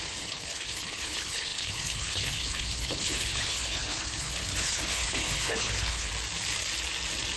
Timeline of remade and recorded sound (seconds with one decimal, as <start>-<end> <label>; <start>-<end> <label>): 0.0-6.1 remade; 6.1-7.4 recorded